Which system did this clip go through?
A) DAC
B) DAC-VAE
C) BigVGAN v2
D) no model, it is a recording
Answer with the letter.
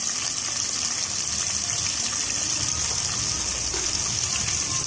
D